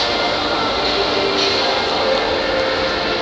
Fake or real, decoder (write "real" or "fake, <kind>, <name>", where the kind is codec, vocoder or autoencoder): real